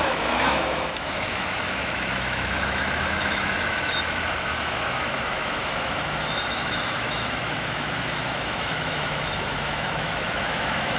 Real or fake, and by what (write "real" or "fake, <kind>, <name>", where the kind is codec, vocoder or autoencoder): fake, autoencoder, DAC-VAE